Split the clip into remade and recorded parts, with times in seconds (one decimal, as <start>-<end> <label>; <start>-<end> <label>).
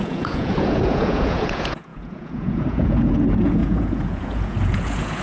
0.0-5.2 remade